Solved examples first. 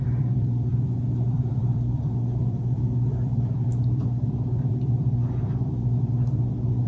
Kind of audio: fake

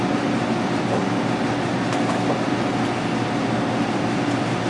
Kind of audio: real